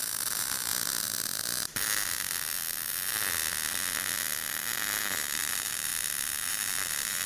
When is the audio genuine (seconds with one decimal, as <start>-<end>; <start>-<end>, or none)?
0.7-5.0; 5.9-6.5